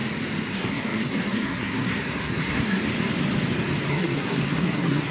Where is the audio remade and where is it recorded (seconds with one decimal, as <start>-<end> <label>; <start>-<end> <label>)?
0.0-0.5 recorded; 0.5-2.8 remade; 2.8-3.9 recorded; 3.9-5.1 remade